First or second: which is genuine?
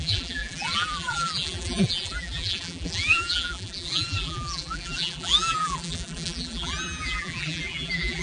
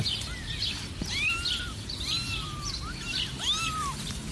second